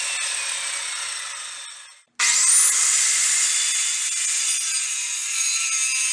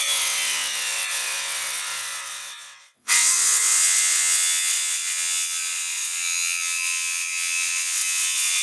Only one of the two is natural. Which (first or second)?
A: first